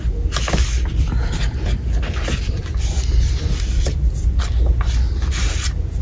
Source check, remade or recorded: recorded